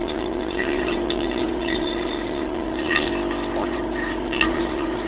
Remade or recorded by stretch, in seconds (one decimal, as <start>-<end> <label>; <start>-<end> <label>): 0.0-3.1 remade; 3.1-3.6 recorded; 3.6-5.1 remade